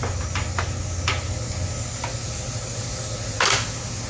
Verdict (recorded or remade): recorded